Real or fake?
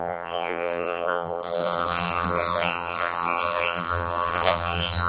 fake